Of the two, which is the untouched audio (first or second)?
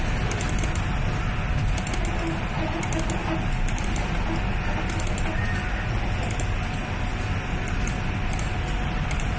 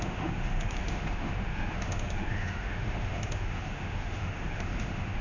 first